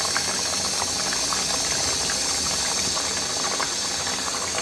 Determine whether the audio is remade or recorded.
recorded